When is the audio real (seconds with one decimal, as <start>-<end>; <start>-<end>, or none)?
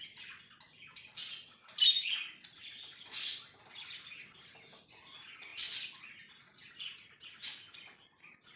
0.0-8.6